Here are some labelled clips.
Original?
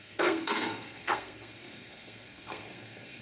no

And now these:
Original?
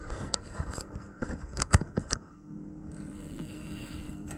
no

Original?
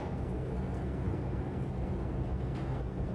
no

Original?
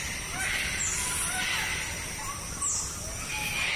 yes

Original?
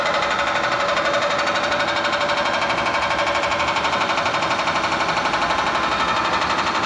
yes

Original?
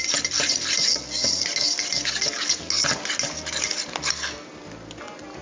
yes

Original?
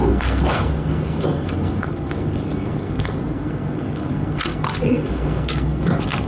no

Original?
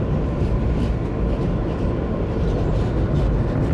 yes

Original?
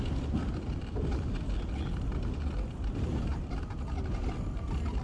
yes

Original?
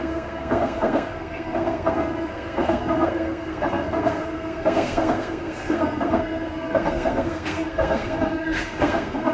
no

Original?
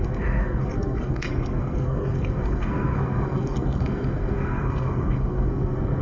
no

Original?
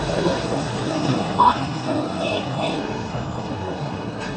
no